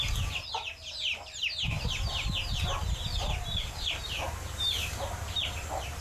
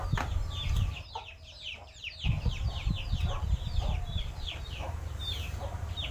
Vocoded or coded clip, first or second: second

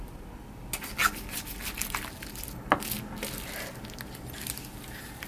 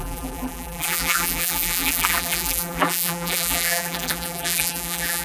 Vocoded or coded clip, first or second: second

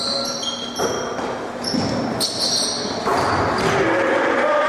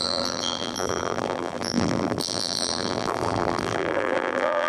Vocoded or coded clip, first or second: second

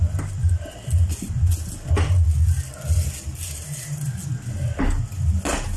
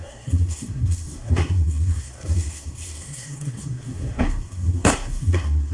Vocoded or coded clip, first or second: second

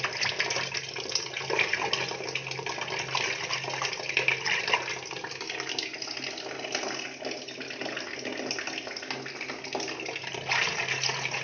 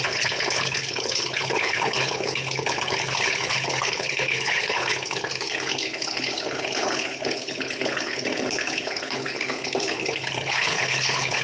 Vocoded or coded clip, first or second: second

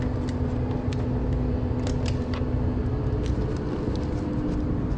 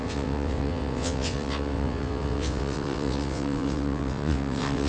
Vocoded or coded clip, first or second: second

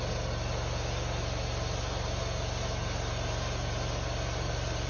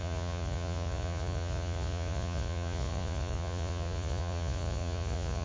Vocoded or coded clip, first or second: second